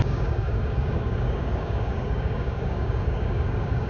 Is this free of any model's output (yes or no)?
no